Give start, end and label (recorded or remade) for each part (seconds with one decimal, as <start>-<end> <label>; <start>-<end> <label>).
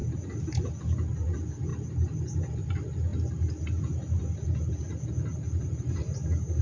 0.0-6.6 recorded